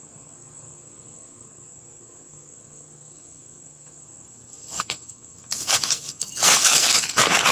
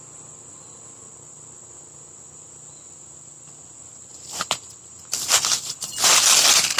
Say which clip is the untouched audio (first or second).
second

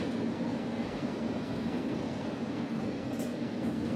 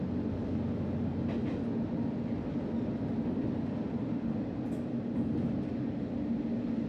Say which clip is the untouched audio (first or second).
second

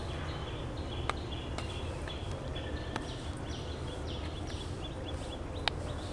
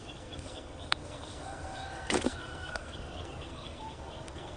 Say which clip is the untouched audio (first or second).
first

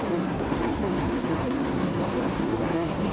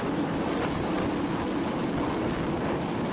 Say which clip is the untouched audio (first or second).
second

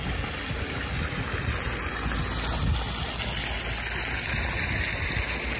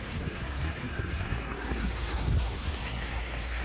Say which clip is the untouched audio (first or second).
first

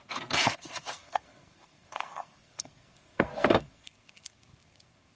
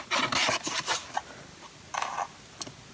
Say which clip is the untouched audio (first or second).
second